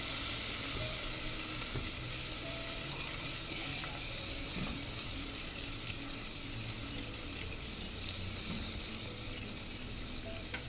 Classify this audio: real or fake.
fake